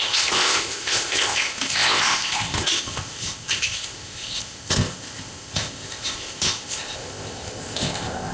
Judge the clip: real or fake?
fake